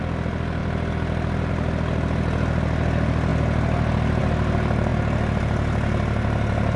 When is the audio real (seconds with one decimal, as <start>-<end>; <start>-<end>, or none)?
0.0-6.8